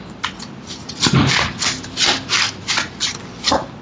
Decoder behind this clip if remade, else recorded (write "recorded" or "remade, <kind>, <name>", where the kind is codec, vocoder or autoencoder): recorded